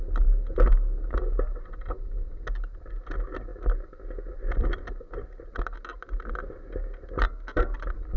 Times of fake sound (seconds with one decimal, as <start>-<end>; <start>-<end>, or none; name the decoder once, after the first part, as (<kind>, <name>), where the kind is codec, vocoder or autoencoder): none